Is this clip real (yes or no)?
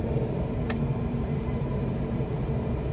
no